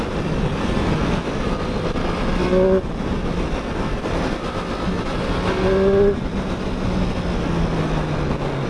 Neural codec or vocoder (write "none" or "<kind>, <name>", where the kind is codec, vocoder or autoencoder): none